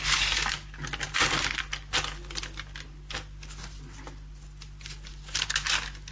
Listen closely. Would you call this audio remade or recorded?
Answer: recorded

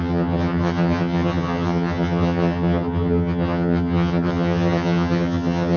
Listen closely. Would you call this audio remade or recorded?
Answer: remade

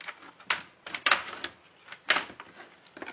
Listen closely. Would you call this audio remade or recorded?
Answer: recorded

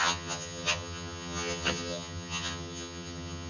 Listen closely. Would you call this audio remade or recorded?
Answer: remade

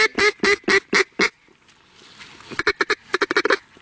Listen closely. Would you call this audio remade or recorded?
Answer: recorded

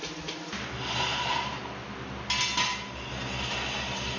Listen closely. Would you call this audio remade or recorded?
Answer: recorded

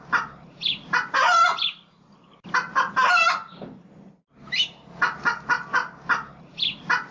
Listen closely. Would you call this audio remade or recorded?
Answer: recorded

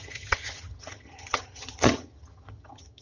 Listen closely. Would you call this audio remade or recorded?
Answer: remade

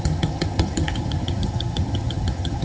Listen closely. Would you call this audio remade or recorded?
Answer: remade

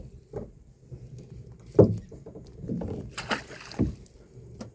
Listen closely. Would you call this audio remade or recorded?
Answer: recorded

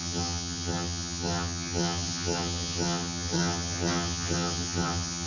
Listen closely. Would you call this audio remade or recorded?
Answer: remade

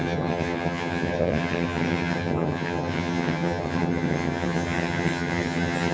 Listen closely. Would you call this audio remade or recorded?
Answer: remade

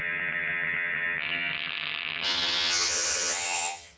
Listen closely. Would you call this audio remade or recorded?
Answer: remade